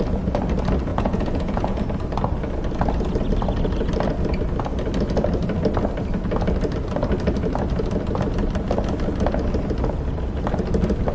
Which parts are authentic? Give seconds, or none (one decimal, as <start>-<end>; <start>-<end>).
0.0-0.9; 1.8-11.1